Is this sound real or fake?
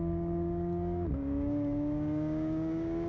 fake